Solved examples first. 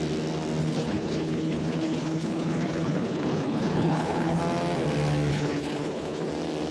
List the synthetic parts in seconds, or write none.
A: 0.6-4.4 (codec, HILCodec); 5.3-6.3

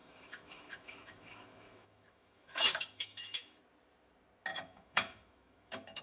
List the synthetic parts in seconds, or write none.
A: 0.0-3.6 (autoencoder, DAC-VAE); 4.5-6.0

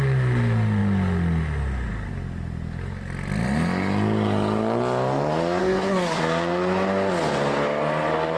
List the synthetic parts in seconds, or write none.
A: 5.6-6.2 (codec, SNAC)

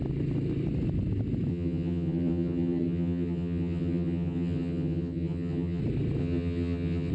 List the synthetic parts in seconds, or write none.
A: 1.5-5.8 (vocoder, HiFi-GAN); 6.2-7.1

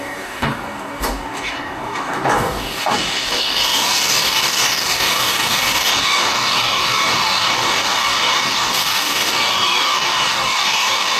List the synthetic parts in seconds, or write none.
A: 0.0-11.2 (codec, DAC)

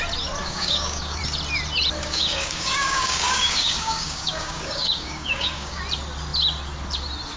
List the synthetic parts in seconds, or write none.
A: 0.4-1.2 (codec, DAC); 2.0-5.8

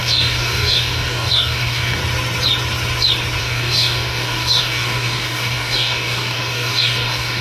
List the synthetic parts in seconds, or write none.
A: 0.0-2.0 (codec, DAC); 3.4-7.4